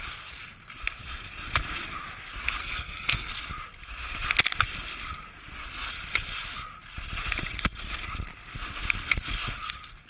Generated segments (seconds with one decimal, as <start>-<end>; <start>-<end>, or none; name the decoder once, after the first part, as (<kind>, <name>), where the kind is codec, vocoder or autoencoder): 2.6-3.3 (codec, SNAC)

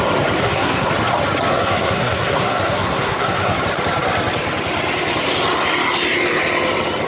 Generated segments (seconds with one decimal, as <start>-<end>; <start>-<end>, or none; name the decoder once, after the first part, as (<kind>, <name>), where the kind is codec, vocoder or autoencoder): 0.4-0.9 (codec, SNAC); 1.5-3.6

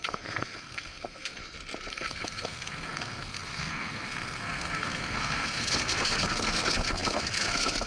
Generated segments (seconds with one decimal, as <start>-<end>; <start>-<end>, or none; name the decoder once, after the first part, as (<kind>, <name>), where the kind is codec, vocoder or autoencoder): 0.0-1.4 (codec, SNAC); 1.9-7.9

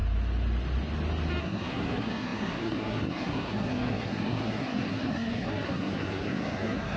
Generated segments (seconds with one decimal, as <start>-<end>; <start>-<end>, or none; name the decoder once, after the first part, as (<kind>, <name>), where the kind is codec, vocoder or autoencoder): 1.4-7.0 (codec, SNAC)

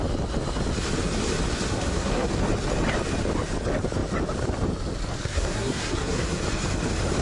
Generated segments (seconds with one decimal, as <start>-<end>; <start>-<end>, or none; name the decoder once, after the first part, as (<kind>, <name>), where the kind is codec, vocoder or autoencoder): 1.7-2.3 (codec, SNAC); 5.2-6.4

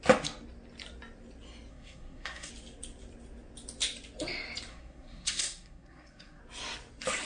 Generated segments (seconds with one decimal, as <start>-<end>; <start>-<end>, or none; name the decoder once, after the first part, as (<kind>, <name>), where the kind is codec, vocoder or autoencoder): 1.7-2.5 (codec, SNAC); 4.7-6.4

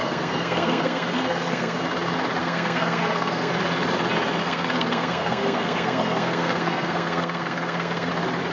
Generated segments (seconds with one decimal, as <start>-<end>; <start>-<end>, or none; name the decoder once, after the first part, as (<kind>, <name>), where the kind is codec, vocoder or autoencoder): 0.0-1.8 (codec, SNAC); 2.4-3.5; 4.4-8.1

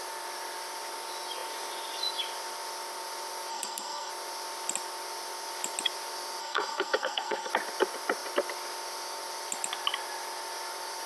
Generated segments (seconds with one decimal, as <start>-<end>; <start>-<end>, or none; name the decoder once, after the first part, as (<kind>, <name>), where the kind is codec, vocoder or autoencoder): 3.5-4.1 (codec, SNAC); 6.4-7.5